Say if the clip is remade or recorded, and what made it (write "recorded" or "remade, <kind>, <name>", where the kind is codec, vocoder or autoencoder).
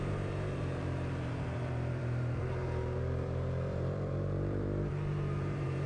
remade, vocoder, BigVGAN v2